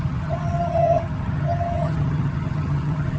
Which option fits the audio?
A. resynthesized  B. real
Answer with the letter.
A